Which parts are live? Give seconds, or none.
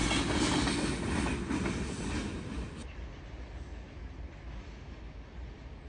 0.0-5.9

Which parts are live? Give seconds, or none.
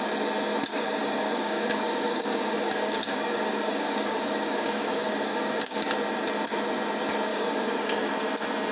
0.0-0.7; 5.8-7.3; 8.1-8.7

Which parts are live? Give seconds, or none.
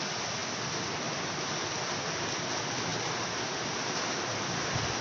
0.0-5.0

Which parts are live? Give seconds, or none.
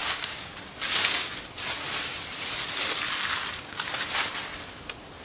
0.5-5.2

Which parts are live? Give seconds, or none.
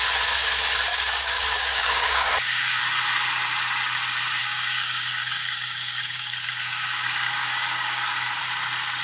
0.0-0.9; 2.8-4.4; 8.4-9.0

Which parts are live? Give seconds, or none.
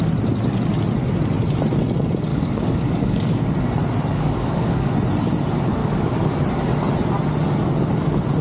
0.0-2.3; 3.4-4.1; 4.9-5.8; 6.3-8.4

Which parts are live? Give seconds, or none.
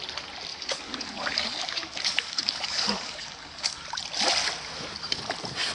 0.0-0.5; 3.8-5.7